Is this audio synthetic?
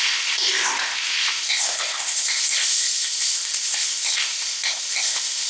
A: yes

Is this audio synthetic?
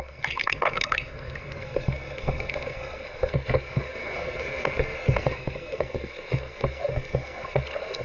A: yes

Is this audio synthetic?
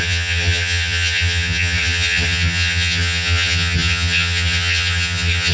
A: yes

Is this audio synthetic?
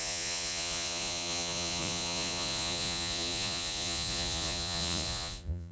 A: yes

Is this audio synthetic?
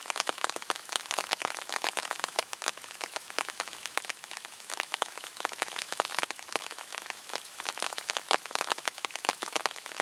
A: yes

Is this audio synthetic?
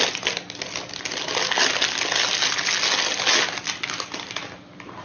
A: no